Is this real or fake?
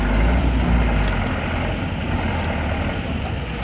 real